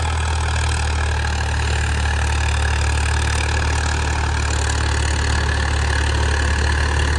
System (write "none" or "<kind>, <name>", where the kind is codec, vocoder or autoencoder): none